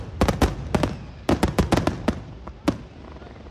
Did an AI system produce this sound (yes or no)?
no